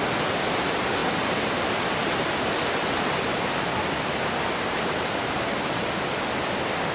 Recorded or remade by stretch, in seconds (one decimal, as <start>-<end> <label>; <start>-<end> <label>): 0.0-6.9 recorded